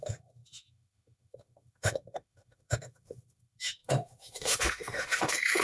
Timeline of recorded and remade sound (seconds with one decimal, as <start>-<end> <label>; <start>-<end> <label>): 0.0-5.6 remade